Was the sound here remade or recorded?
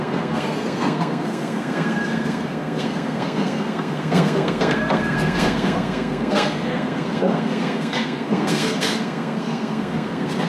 remade